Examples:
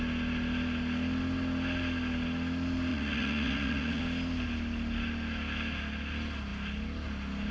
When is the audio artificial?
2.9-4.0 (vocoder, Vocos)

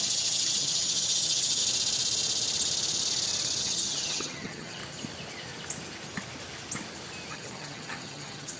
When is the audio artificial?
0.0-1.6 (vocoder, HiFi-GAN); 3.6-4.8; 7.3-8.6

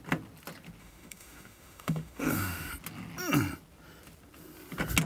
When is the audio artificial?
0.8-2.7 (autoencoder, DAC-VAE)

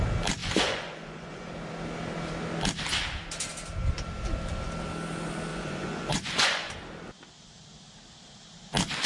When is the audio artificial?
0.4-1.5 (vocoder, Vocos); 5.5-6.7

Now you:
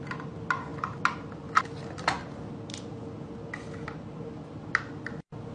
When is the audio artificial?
none

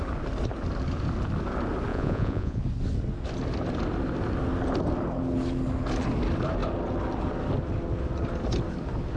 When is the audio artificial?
1.9-2.6 (vocoder, Vocos)